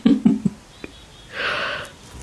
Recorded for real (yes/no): yes